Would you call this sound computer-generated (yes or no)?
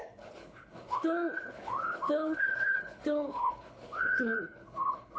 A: yes